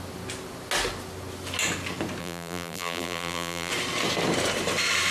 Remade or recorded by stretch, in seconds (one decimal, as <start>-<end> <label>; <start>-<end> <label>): 0.0-2.2 recorded; 2.2-3.7 remade; 3.7-5.1 recorded